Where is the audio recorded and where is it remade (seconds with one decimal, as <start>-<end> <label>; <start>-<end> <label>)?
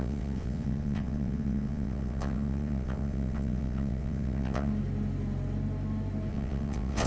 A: 0.0-4.7 remade; 4.7-6.3 recorded; 6.3-7.1 remade